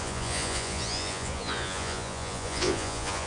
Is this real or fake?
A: fake